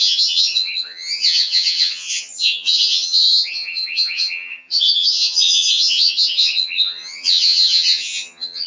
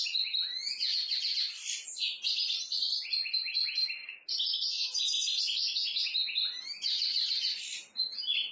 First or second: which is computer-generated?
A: first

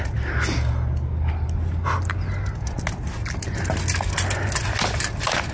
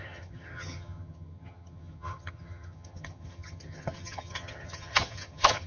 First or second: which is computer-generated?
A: second